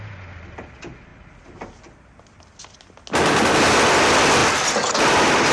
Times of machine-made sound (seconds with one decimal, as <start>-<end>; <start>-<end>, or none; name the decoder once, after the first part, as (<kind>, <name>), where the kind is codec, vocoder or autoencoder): none